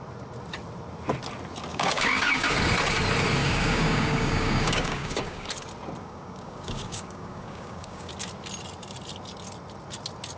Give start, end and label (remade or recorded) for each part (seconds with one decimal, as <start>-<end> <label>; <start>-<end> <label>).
0.0-1.7 recorded; 1.7-2.6 remade; 2.6-3.4 recorded; 3.4-5.5 remade; 5.5-6.0 recorded; 6.0-8.1 remade; 8.1-10.4 recorded